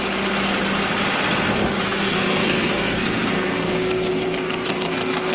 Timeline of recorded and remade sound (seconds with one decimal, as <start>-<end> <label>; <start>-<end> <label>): 0.0-1.8 recorded; 1.8-5.3 remade